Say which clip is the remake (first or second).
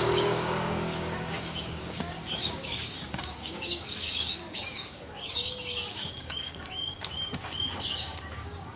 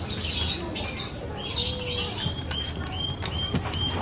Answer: first